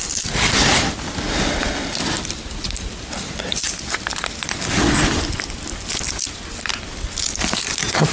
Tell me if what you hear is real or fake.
real